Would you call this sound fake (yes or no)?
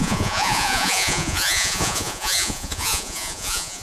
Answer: yes